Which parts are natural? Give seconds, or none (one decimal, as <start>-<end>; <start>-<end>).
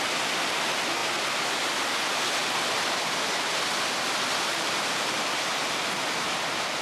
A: 0.0-2.4; 5.5-6.8